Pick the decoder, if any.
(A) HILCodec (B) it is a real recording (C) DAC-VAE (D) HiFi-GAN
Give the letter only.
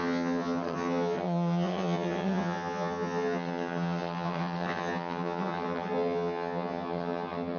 D